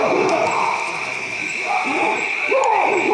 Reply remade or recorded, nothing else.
recorded